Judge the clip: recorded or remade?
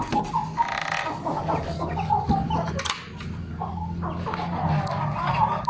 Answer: recorded